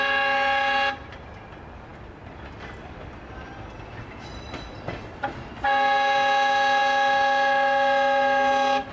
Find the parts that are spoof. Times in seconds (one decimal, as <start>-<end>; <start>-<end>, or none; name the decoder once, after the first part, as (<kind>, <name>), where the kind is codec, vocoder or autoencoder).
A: none